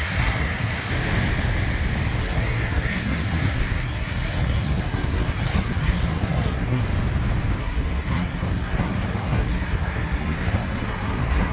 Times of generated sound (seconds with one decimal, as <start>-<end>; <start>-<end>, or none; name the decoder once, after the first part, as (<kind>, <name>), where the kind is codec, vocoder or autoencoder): 0.0-0.9 (codec, SNAC); 2.2-6.8; 7.6-11.5